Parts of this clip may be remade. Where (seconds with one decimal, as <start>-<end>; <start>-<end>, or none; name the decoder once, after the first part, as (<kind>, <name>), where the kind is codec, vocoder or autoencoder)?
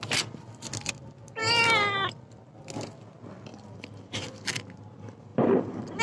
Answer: 3.5-4.2 (vocoder, BigVGAN v2); 5.3-6.0